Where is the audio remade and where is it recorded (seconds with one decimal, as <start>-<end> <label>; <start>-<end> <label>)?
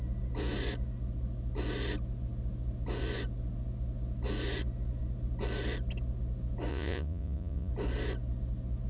0.0-6.7 recorded; 6.7-7.7 remade; 7.7-8.9 recorded